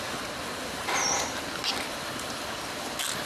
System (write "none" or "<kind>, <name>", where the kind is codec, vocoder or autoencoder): none